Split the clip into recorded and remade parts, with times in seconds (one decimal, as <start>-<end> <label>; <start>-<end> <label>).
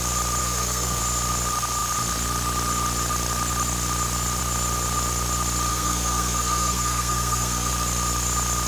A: 0.0-0.4 recorded; 0.4-1.0 remade; 1.0-5.7 recorded; 5.7-7.7 remade; 7.7-8.7 recorded